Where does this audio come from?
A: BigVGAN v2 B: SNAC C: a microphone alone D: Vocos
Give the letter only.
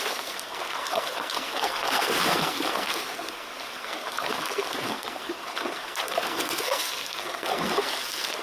B